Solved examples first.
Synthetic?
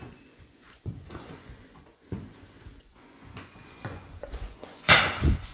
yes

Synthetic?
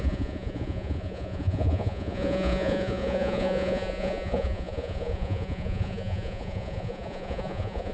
yes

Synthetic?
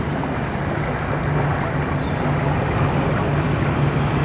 no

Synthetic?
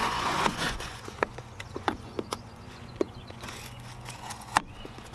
yes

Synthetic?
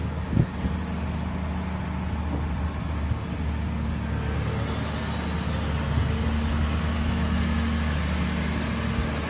no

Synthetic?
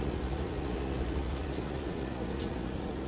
yes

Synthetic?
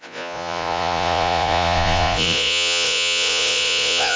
yes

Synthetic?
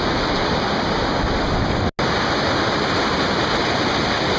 no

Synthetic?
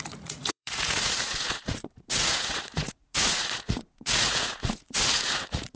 yes